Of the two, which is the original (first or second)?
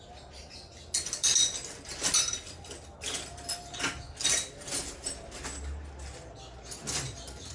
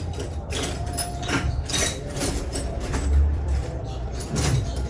first